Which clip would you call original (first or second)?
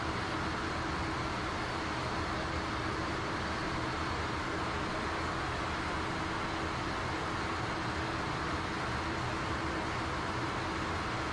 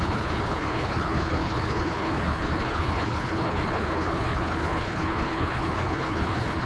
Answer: first